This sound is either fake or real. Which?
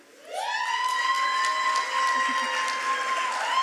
real